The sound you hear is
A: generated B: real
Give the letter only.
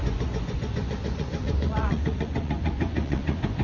A